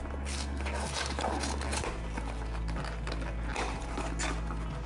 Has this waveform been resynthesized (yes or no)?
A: no